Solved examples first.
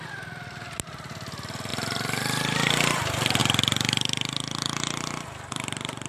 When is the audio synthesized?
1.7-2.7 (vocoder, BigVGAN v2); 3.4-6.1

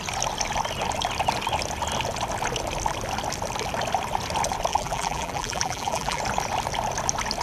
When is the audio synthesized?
4.7-6.2 (vocoder, BigVGAN v2)

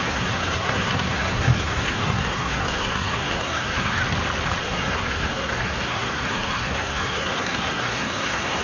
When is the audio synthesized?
0.0-4.0 (codec, SNAC); 4.6-8.6

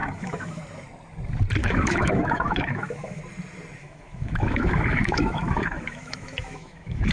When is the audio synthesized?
0.0-0.6 (autoencoder, DAC-VAE); 1.6-3.2; 3.8-7.1